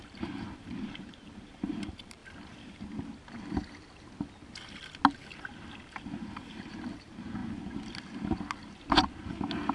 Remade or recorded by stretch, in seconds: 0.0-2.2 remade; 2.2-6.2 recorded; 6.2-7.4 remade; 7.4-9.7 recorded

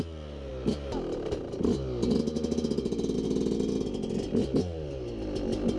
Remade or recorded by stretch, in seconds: 0.0-5.8 recorded

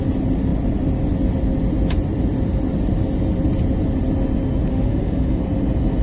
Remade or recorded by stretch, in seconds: 0.0-4.7 recorded; 4.7-5.4 remade; 5.4-6.0 recorded

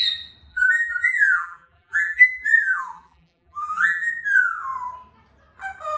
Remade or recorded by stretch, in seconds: 0.0-0.5 recorded; 0.5-4.1 remade; 4.1-6.0 recorded

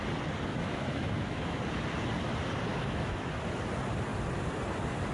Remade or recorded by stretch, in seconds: 0.0-0.5 recorded; 0.5-1.6 remade; 1.6-2.7 recorded; 2.7-3.3 remade; 3.3-5.1 recorded